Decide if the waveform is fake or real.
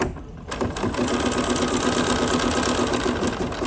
real